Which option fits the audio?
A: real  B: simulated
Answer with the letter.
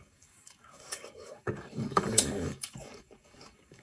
B